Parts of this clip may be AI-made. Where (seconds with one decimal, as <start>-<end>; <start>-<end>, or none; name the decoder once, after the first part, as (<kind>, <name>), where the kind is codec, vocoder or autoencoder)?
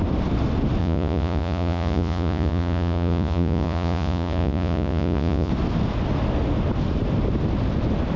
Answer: 0.8-5.5 (vocoder, Vocos)